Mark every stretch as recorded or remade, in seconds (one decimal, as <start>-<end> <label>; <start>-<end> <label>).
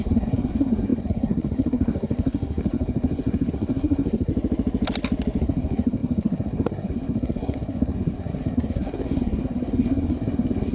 0.0-4.3 remade; 4.3-5.4 recorded; 5.4-10.7 remade